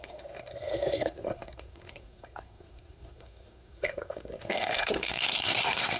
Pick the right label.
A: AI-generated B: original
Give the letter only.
A